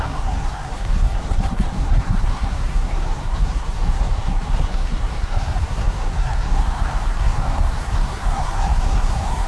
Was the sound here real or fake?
fake